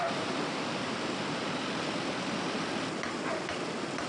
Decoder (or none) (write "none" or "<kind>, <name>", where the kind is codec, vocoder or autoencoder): none